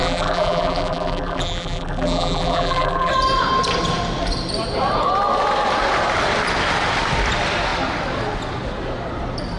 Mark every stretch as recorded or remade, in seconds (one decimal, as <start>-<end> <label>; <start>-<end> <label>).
0.0-3.1 remade; 3.1-9.6 recorded